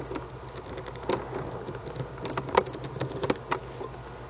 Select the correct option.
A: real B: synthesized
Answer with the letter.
A